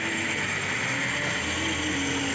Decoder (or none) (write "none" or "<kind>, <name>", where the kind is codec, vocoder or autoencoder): none